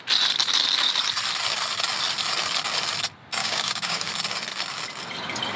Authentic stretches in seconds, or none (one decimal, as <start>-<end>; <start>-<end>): 0.0-3.4; 4.1-5.6